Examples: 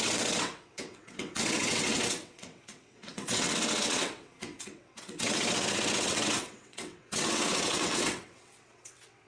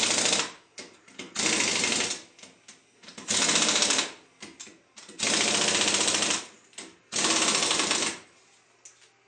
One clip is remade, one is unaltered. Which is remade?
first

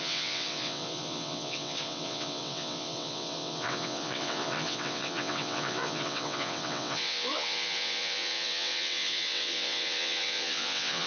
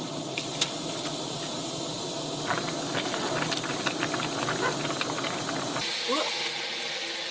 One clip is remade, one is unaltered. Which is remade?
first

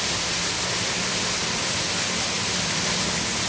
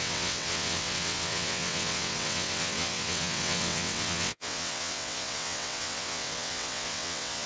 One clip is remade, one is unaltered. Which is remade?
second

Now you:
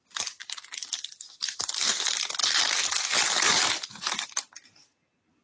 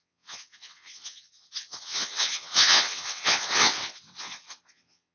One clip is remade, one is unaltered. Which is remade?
second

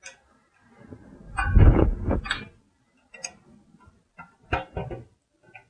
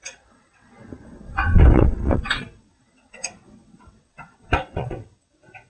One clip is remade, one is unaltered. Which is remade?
second